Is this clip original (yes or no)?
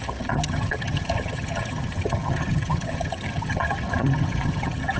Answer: no